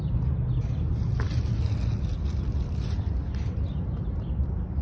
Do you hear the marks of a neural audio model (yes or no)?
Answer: no